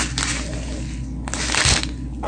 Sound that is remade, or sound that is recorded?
recorded